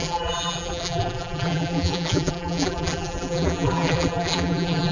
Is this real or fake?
fake